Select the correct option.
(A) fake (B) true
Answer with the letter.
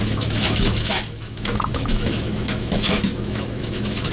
A